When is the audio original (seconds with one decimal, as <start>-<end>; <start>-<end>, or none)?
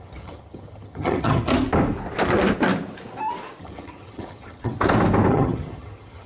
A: 1.5-3.6; 4.7-5.3